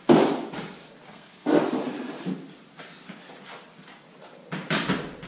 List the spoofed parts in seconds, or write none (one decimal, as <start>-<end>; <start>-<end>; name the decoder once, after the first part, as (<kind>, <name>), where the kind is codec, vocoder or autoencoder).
1.1-1.6 (codec, SNAC)